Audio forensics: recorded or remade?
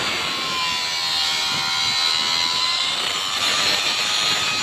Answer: recorded